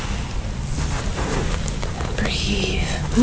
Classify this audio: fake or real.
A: real